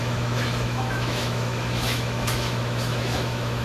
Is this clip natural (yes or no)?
no